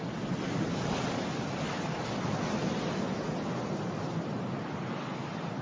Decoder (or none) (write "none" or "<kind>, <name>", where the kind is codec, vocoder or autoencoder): none